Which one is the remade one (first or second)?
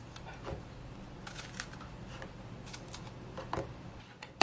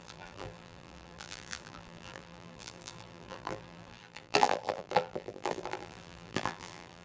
second